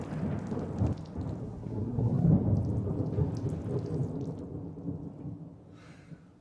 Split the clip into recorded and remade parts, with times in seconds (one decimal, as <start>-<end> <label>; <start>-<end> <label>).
0.0-1.4 recorded; 1.4-2.3 remade; 2.3-6.4 recorded